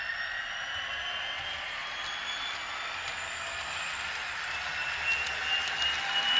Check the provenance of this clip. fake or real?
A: real